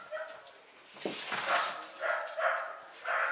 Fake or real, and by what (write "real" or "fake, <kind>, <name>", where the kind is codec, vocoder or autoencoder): real